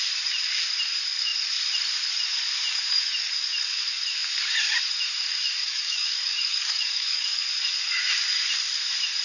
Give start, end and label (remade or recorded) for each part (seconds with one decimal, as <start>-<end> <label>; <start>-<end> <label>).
0.0-5.6 recorded; 5.6-7.4 remade; 7.4-9.2 recorded